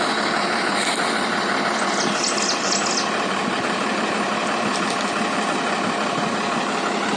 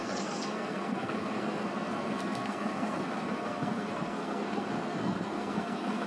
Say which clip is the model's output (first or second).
second